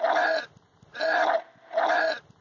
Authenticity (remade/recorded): recorded